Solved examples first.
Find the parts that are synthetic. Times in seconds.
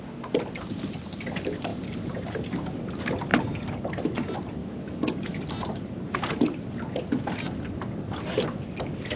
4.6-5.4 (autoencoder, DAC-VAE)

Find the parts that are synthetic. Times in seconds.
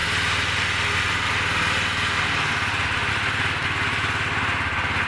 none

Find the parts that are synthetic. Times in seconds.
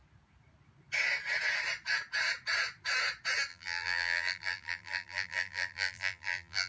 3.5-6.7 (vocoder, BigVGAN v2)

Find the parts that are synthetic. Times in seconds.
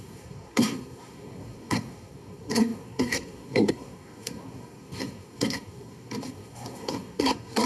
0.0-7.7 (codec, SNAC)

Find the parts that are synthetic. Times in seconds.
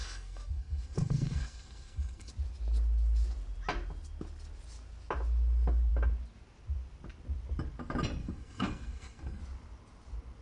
0.0-2.3 (codec, SNAC); 8.2-9.4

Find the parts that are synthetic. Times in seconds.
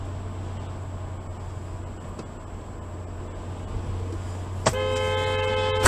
none